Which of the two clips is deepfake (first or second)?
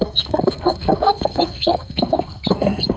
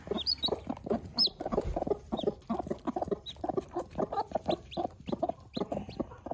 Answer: first